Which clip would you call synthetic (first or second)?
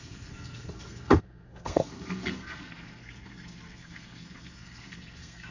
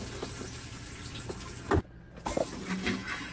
first